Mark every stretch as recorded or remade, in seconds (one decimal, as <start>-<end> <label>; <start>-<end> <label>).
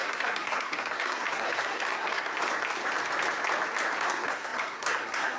0.0-2.3 remade; 2.3-4.0 recorded; 4.0-5.4 remade